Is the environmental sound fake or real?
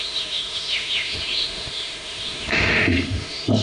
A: fake